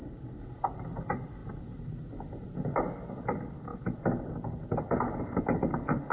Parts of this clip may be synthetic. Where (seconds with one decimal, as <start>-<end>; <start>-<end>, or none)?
none